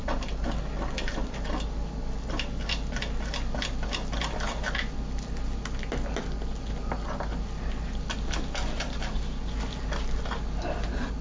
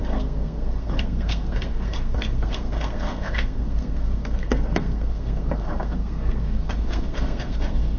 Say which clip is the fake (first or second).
second